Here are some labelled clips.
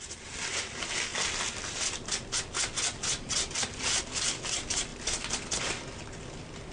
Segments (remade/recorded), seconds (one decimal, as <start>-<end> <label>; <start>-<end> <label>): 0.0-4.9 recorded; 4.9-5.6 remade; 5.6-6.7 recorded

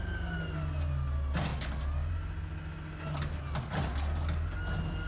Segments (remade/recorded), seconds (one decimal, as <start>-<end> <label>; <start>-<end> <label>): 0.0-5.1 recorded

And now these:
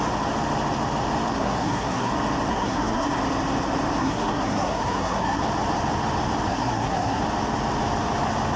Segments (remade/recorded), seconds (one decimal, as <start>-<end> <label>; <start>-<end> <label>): 0.0-1.3 recorded; 1.3-2.1 remade; 2.1-2.5 recorded; 2.5-3.2 remade; 3.2-4.0 recorded; 4.0-5.4 remade; 5.4-6.5 recorded; 6.5-7.2 remade; 7.2-8.6 recorded

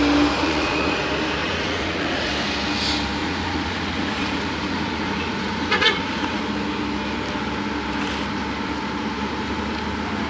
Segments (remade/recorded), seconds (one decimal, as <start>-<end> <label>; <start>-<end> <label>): 0.0-0.4 recorded; 0.4-1.0 remade; 1.0-1.4 recorded; 1.4-2.3 remade; 2.3-3.2 recorded; 3.2-6.4 remade; 6.4-10.3 recorded

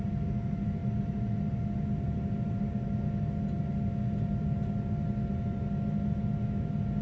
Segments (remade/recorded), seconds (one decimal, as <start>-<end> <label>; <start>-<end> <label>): 0.0-7.0 recorded

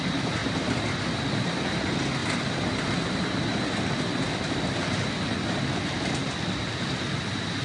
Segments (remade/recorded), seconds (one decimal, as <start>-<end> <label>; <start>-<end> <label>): 0.0-0.4 recorded; 0.4-1.0 remade; 1.0-2.2 recorded; 2.2-4.6 remade; 4.6-7.6 recorded